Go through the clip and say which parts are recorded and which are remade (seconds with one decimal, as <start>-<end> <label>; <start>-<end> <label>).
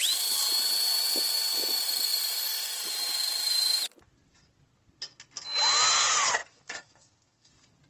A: 0.0-6.4 recorded; 6.4-7.5 remade; 7.5-7.9 recorded